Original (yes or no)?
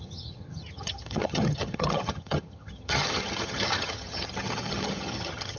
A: no